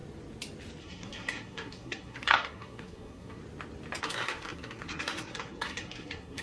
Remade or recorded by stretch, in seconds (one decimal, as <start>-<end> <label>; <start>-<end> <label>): 0.0-0.8 recorded; 0.8-3.4 remade; 3.4-4.0 recorded; 4.0-6.4 remade